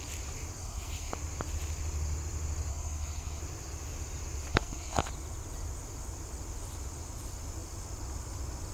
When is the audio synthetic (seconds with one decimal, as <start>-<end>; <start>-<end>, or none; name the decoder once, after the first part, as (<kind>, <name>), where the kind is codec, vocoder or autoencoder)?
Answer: 0.6-1.1 (codec, SNAC); 2.7-3.4; 4.5-5.1